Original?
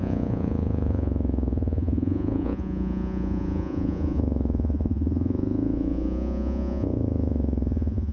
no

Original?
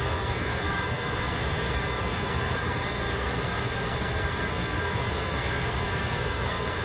no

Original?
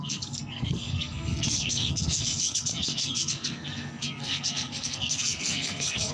no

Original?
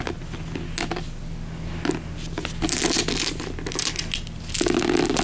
yes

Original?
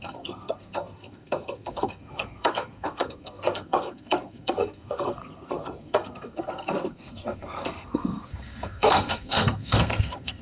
no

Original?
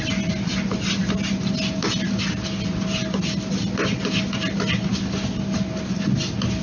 yes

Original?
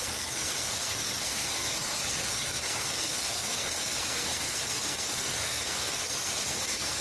no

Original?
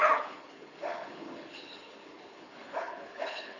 no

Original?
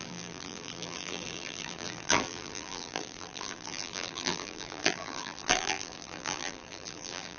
no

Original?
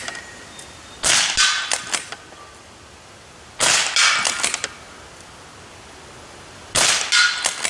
yes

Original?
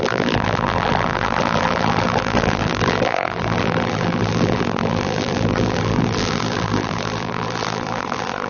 no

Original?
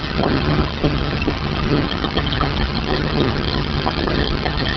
no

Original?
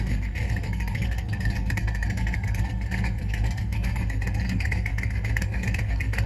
no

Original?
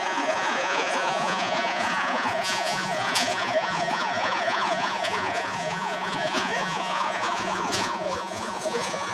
no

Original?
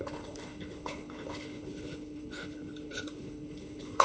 no